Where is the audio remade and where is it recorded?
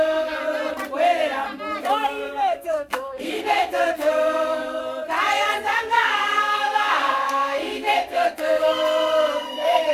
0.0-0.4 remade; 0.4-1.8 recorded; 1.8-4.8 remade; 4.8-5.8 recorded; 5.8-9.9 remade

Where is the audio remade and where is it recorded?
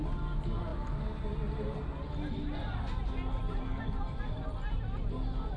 0.0-5.6 recorded